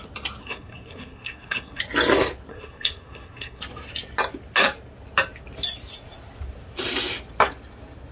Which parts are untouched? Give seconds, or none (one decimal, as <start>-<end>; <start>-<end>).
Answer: 0.0-0.4; 1.8-2.5; 3.6-8.1